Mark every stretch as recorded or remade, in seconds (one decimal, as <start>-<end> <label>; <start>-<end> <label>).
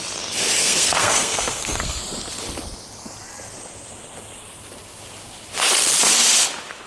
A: 0.0-0.6 recorded; 0.6-2.0 remade; 2.0-6.9 recorded